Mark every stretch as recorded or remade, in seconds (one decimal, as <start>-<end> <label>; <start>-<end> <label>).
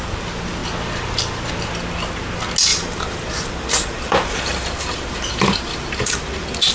0.0-2.7 recorded; 2.7-6.7 remade